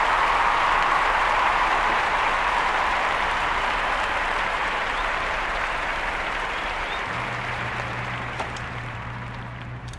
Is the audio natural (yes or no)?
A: no